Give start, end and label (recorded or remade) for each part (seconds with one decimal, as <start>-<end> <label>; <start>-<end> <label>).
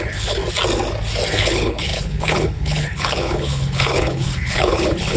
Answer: 0.0-0.4 remade; 0.4-1.4 recorded; 1.4-5.2 remade